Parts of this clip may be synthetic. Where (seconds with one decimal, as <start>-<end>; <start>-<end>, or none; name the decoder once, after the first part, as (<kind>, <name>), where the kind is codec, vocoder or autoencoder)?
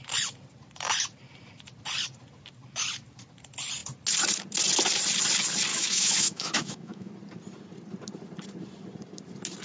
5.7-7.1 (autoencoder, DAC-VAE)